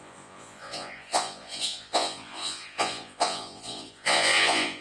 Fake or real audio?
fake